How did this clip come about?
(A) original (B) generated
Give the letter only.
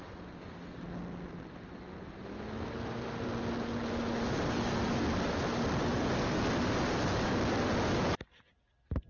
A